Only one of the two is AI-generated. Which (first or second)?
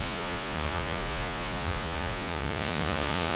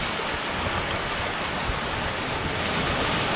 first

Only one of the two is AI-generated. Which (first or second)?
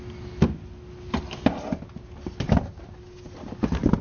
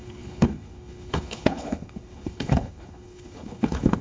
second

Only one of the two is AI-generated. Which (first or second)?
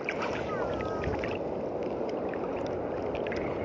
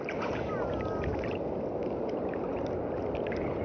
second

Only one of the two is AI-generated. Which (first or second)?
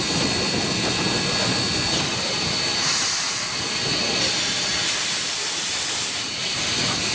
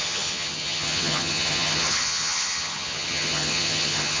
second